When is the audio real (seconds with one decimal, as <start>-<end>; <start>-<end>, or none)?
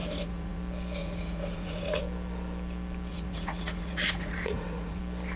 0.6-1.0; 2.0-3.1; 5.0-5.4